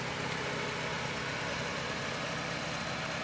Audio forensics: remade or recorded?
recorded